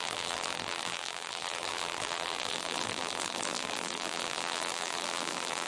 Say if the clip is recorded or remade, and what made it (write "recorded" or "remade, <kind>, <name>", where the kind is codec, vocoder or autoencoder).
remade, vocoder, BigVGAN v2